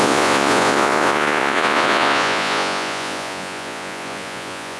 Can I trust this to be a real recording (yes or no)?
no